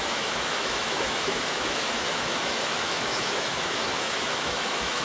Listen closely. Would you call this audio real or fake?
fake